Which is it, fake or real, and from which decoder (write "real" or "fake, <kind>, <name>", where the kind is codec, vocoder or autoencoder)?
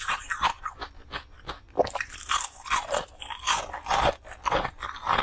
real